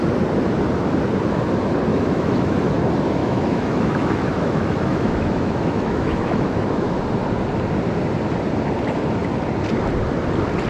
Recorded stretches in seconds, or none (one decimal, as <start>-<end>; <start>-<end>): 0.0-1.9; 2.6-3.2; 7.0-10.7